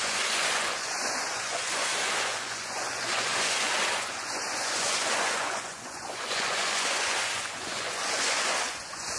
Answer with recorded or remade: remade